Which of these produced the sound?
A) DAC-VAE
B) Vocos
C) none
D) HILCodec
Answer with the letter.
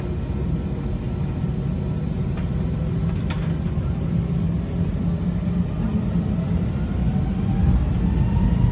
C